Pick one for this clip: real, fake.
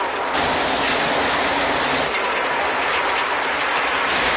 real